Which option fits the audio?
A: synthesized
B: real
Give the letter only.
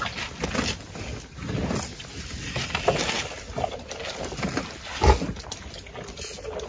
B